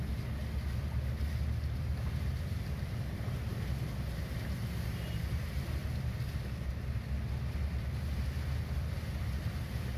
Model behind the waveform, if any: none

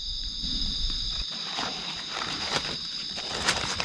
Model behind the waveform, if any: vocoder, BigVGAN v2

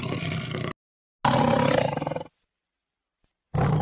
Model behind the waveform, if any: none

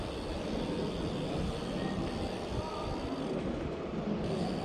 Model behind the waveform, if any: none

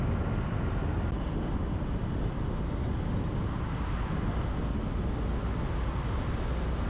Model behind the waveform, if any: none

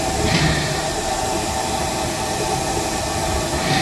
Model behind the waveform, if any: none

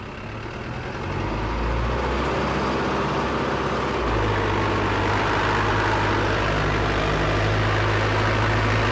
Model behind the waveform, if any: none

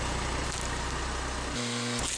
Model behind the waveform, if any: none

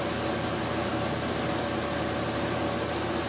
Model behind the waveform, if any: none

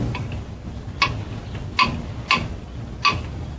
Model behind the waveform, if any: none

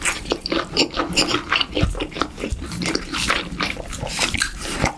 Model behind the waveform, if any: vocoder, BigVGAN v2